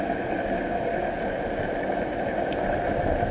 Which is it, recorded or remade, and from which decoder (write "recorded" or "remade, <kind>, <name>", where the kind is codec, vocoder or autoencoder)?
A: recorded